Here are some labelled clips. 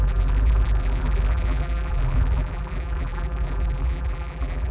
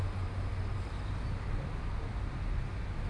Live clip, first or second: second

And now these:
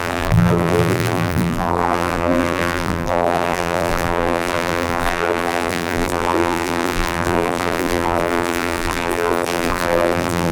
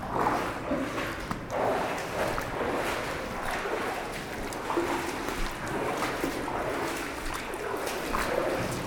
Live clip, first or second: second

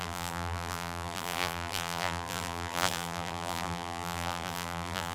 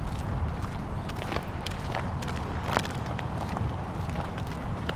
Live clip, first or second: second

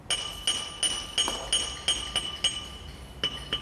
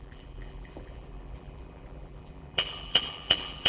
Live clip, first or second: first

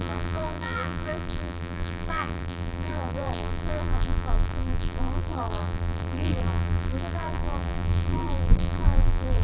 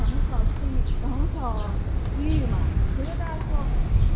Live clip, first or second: second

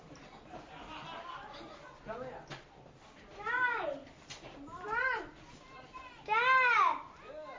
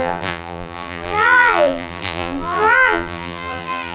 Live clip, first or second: first